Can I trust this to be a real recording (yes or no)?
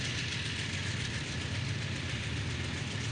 no